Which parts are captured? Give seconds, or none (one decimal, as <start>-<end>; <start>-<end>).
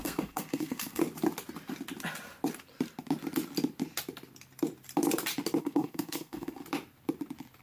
1.0-5.6; 6.6-7.6